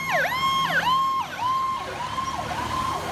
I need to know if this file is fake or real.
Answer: real